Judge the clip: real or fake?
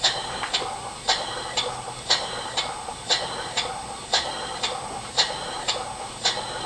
real